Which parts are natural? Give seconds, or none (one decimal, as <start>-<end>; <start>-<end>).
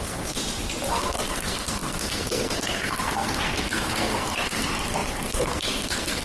0.4-0.9